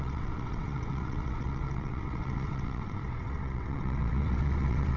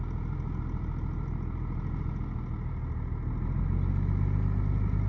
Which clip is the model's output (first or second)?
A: first